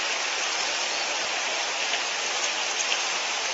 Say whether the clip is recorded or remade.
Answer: recorded